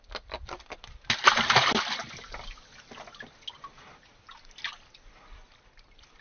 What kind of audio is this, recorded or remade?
recorded